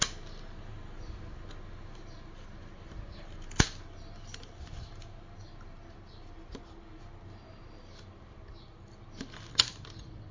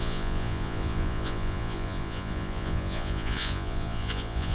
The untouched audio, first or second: first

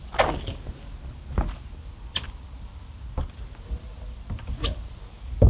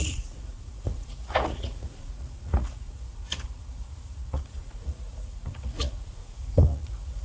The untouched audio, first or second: first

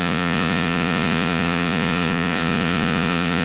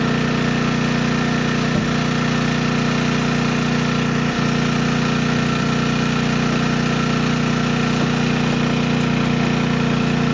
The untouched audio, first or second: second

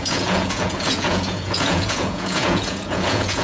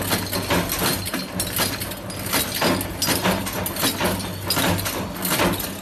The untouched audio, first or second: second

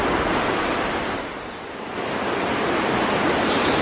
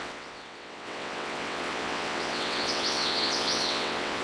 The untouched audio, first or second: first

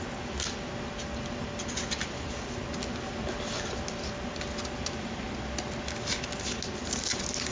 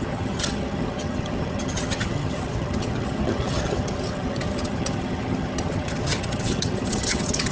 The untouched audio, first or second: first